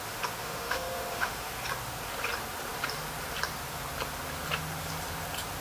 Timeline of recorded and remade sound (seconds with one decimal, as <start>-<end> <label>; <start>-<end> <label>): 0.0-0.4 recorded; 0.4-1.5 remade; 1.5-5.6 recorded